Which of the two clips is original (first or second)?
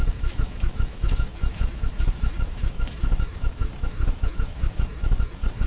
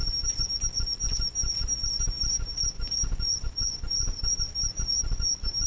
second